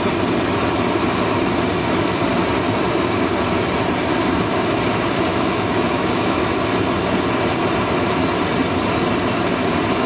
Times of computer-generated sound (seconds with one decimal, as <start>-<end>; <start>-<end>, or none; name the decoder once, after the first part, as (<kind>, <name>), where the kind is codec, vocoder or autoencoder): 5.3-6.4 (autoencoder, DAC-VAE)